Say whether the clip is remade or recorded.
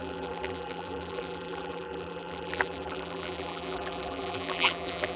remade